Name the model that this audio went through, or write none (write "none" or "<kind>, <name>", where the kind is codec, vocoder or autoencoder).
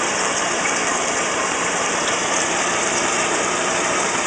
vocoder, BigVGAN v2